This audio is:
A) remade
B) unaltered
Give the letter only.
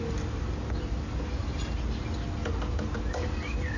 B